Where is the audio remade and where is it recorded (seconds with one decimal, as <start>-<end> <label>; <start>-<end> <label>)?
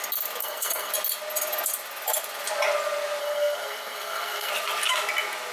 0.0-0.4 recorded; 0.4-0.9 remade; 0.9-3.2 recorded; 3.2-4.5 remade; 4.5-5.5 recorded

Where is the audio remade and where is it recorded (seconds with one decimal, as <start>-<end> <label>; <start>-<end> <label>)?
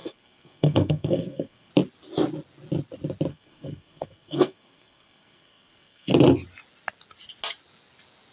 0.0-1.7 remade; 1.7-3.3 recorded; 3.3-6.1 remade; 6.1-8.3 recorded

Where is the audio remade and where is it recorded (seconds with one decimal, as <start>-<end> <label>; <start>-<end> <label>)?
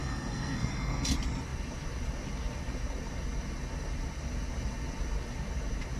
0.0-1.1 remade; 1.1-6.0 recorded